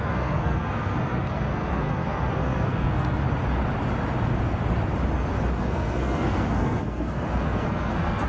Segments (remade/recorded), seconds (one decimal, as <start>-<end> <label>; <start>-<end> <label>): 0.0-3.2 remade; 3.2-5.6 recorded; 5.6-8.3 remade